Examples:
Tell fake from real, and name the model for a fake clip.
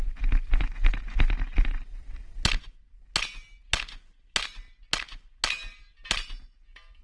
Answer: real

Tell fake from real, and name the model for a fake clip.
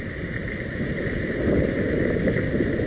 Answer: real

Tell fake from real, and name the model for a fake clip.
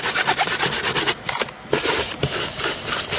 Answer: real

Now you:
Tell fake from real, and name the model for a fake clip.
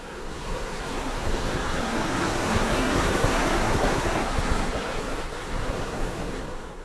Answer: fake, codec, SNAC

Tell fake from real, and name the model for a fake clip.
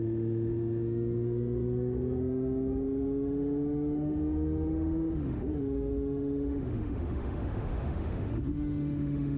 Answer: fake, autoencoder, DAC-VAE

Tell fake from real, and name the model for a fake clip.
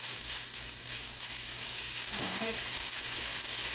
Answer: fake, codec, DAC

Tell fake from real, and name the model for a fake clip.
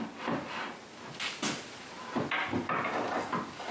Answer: real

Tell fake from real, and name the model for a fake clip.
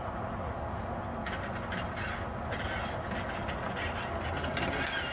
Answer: real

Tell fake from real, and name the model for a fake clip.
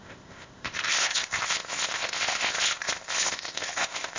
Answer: fake, codec, ZipCodec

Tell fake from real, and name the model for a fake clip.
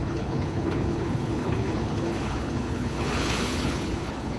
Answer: fake, codec, HILCodec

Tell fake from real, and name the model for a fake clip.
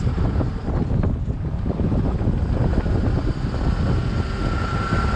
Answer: real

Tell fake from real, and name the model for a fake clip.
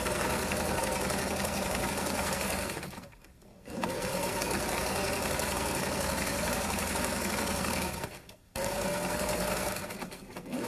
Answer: fake, codec, SNAC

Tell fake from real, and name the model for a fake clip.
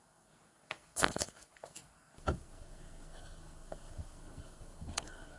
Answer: fake, codec, SNAC